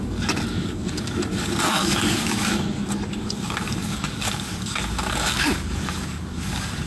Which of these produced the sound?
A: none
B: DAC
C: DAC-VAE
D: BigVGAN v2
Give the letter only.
B